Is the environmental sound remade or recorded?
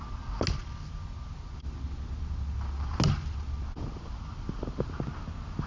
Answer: recorded